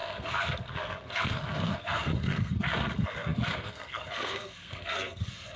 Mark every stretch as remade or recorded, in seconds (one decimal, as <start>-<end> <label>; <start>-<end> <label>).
0.0-5.6 remade